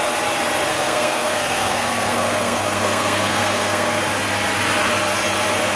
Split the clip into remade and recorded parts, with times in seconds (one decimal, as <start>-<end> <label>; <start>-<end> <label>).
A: 0.0-0.7 recorded; 0.7-4.0 remade; 4.0-5.8 recorded